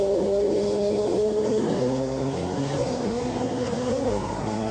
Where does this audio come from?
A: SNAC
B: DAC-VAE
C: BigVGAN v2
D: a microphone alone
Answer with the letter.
A